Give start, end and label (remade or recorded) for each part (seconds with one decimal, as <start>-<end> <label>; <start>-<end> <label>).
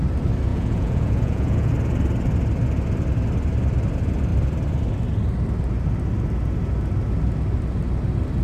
0.0-0.5 recorded; 0.5-1.7 remade; 1.7-8.4 recorded